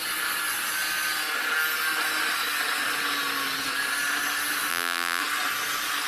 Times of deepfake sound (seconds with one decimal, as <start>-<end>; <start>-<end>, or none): 4.7-5.2